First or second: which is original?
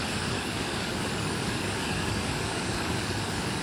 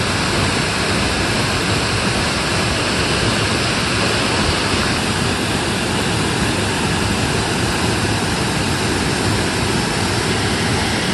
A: second